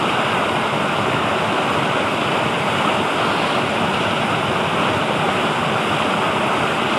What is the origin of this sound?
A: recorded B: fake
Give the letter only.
A